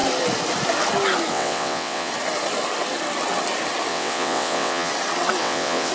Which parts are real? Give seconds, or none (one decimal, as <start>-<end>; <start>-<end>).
0.0-1.3; 2.1-3.9; 4.9-5.4

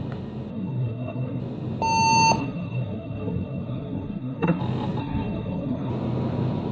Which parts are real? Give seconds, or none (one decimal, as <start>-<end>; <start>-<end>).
0.0-0.5; 1.4-2.4; 4.6-5.0; 5.9-6.7

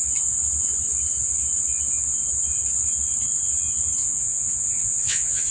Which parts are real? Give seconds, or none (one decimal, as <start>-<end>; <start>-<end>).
0.0-4.0

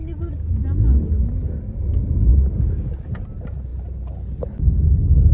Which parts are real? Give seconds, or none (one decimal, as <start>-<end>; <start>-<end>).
0.0-2.3; 2.9-5.3

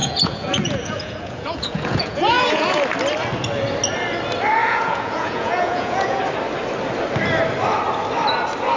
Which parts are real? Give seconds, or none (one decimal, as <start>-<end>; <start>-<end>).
2.8-4.6; 6.2-8.8